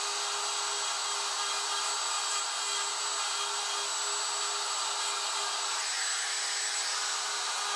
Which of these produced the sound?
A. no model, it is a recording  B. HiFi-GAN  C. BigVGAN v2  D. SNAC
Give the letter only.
A